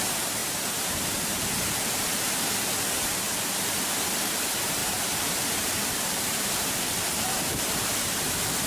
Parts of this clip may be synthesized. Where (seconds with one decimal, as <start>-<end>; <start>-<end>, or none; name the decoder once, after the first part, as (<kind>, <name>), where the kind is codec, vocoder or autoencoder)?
0.4-2.5 (vocoder, BigVGAN v2); 4.8-8.7